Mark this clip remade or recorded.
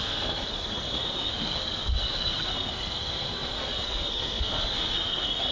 remade